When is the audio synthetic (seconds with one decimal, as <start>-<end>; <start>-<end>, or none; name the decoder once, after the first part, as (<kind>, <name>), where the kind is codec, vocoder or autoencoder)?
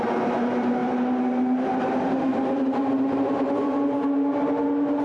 2.3-3.7 (vocoder, BigVGAN v2)